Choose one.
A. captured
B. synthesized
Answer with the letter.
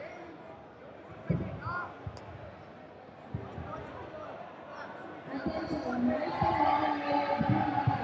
A